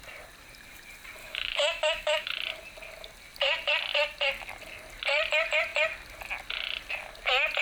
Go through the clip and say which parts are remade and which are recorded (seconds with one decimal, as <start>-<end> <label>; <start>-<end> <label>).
0.0-1.2 recorded; 1.2-2.3 remade; 2.3-7.6 recorded